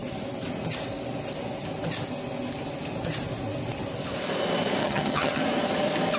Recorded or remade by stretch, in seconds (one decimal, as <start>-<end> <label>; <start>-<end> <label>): 0.0-4.8 recorded; 4.8-5.4 remade; 5.4-6.2 recorded